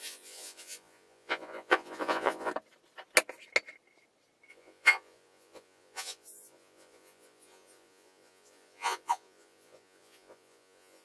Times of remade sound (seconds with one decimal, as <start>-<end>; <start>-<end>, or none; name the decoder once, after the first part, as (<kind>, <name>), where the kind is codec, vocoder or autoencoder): 0.0-2.5 (vocoder, Vocos); 4.5-11.0